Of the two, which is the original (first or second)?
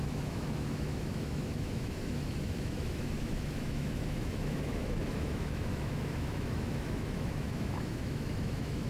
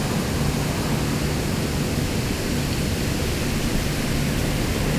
second